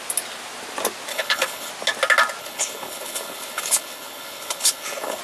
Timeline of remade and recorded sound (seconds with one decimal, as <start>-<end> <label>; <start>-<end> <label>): 0.0-1.1 recorded; 1.1-1.7 remade; 1.7-2.4 recorded; 2.4-5.2 remade